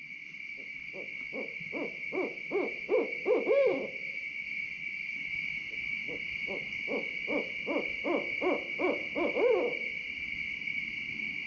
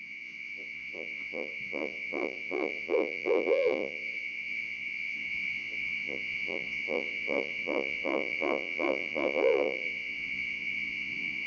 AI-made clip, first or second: second